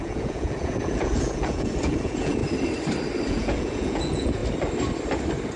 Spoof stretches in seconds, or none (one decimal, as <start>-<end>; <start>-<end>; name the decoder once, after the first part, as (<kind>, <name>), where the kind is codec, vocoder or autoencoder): 0.0-2.4 (vocoder, Vocos); 3.3-4.4